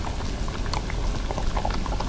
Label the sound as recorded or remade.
recorded